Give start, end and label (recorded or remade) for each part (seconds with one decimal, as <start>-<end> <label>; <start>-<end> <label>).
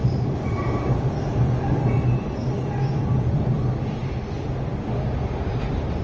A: 0.0-6.0 recorded